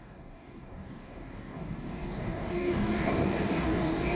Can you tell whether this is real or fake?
fake